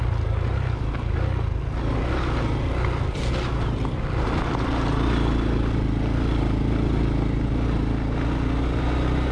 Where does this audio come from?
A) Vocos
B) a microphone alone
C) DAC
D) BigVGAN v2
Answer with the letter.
B